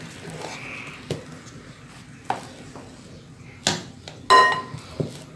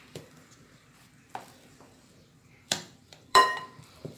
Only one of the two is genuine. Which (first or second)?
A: first